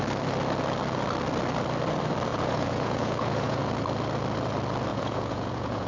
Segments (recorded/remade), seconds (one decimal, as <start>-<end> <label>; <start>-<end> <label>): 0.0-2.3 recorded; 2.3-3.6 remade; 3.6-4.9 recorded; 4.9-5.9 remade